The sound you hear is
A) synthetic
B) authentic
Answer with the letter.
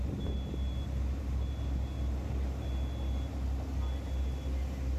B